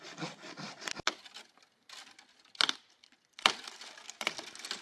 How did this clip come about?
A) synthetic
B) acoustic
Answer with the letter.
B